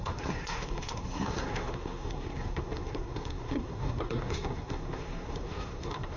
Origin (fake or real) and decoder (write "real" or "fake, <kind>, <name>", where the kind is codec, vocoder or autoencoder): fake, codec, SNAC